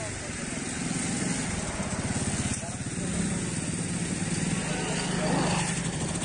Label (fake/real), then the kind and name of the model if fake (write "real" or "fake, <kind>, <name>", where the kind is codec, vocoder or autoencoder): real